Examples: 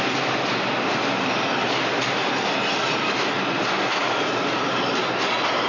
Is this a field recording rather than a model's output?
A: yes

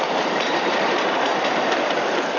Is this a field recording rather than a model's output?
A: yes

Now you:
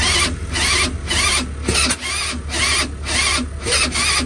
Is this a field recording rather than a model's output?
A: yes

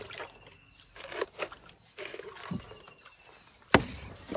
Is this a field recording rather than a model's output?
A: yes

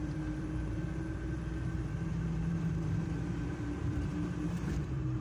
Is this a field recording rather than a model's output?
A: no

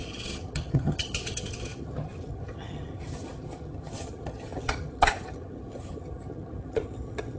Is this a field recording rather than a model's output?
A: no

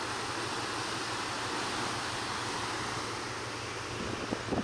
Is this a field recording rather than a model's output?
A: yes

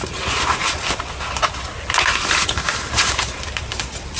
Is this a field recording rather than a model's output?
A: yes